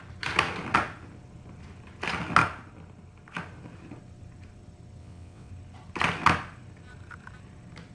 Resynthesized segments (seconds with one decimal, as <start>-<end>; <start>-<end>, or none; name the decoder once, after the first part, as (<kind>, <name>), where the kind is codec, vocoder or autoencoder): 5.0-5.5 (vocoder, WaveNeXt)